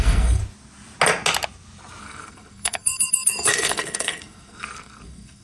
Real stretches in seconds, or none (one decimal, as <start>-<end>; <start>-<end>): 0.4-2.0

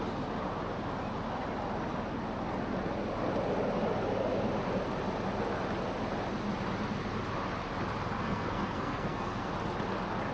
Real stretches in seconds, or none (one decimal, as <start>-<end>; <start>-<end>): 0.0-8.2; 9.5-10.3

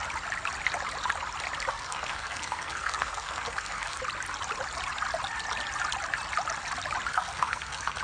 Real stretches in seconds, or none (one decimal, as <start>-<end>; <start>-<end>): 0.0-1.7; 4.0-7.1